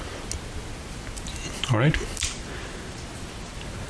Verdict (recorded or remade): recorded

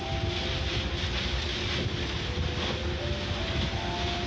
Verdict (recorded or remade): recorded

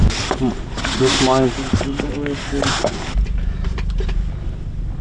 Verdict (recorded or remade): recorded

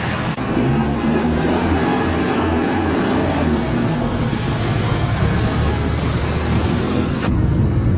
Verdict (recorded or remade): remade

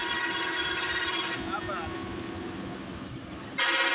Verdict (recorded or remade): recorded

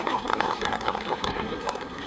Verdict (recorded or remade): remade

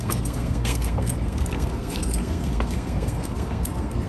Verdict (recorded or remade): remade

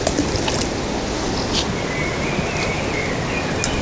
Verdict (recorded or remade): recorded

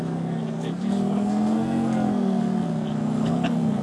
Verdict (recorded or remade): remade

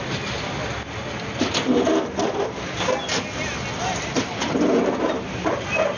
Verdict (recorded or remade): recorded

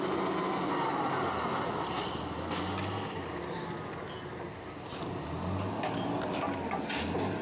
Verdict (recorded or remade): recorded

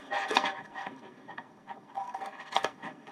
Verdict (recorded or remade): remade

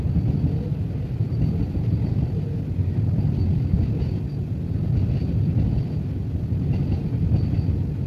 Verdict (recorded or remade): recorded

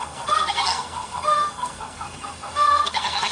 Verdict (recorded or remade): remade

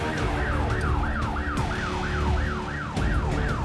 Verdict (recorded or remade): recorded